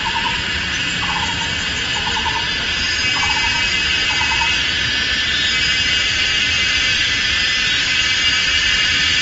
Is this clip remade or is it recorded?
recorded